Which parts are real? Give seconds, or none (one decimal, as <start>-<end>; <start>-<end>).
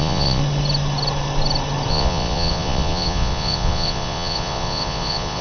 0.4-1.9